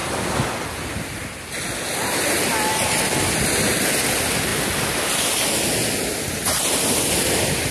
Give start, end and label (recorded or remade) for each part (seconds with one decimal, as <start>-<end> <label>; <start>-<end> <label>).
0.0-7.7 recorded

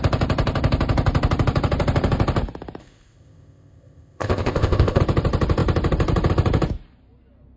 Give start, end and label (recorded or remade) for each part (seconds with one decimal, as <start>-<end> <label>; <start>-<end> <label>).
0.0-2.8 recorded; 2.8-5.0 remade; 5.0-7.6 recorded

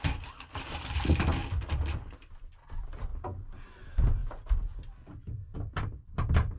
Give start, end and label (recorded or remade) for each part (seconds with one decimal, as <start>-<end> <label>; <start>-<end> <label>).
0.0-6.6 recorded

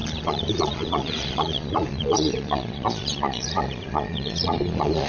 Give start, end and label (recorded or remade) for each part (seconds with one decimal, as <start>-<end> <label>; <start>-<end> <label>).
0.0-5.1 remade

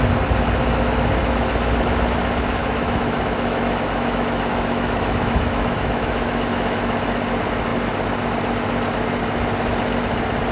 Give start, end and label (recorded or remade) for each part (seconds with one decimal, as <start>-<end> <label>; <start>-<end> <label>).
0.0-2.6 recorded; 2.6-6.8 remade; 6.8-10.5 recorded

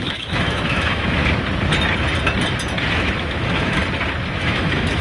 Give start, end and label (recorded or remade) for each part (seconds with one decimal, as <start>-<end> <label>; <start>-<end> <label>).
0.0-1.2 remade; 1.2-2.9 recorded; 2.9-3.8 remade; 3.8-4.4 recorded; 4.4-5.0 remade